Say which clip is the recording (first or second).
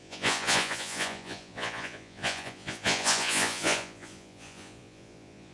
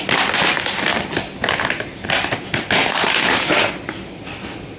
second